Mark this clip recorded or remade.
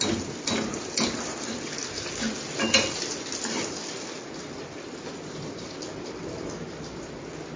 remade